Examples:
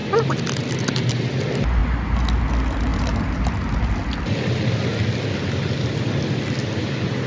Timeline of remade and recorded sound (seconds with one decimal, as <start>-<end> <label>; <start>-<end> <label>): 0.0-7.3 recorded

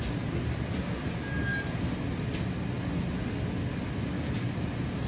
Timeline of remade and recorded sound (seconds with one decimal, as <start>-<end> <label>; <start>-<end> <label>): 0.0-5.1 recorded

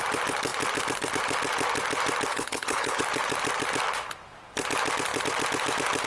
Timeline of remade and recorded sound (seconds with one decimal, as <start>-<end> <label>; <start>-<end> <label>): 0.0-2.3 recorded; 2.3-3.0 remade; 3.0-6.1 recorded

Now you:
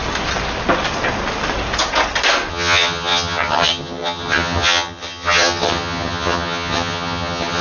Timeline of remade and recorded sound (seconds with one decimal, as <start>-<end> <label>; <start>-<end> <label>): 0.0-2.5 recorded; 2.5-7.6 remade

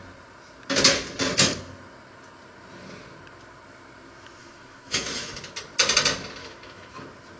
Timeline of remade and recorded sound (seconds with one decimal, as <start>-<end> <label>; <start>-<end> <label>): 0.0-4.4 recorded; 4.4-5.4 remade; 5.4-6.4 recorded; 6.4-7.0 remade; 7.0-7.4 recorded

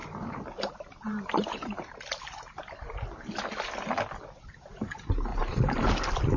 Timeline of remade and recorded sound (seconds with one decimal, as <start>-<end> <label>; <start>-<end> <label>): 0.0-2.6 remade; 2.6-5.3 recorded; 5.3-5.9 remade; 5.9-6.4 recorded

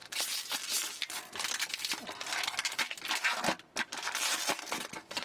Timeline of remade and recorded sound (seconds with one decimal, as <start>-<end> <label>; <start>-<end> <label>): 0.0-5.2 recorded

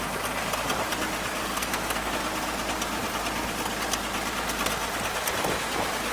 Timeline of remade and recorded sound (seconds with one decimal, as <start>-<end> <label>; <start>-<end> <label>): 0.0-1.4 recorded; 1.4-2.1 remade; 2.1-6.1 recorded